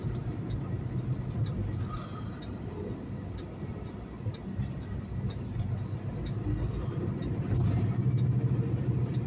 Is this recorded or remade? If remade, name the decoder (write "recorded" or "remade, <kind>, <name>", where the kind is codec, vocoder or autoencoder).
recorded